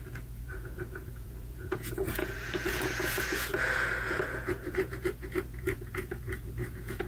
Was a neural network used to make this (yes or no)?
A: yes